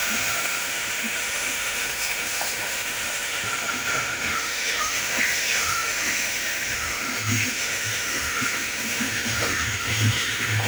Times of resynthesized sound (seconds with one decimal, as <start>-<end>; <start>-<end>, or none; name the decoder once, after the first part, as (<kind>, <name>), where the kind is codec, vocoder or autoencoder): 0.0-10.7 (autoencoder, DAC-VAE)